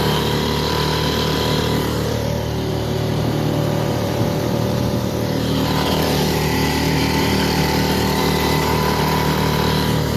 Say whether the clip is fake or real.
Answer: fake